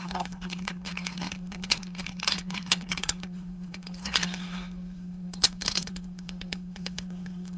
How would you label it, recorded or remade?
remade